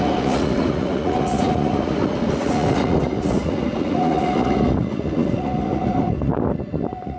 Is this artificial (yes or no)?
yes